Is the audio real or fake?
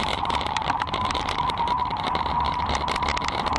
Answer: fake